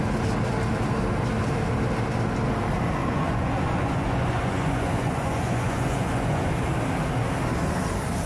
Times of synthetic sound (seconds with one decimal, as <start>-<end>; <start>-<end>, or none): 3.0-6.5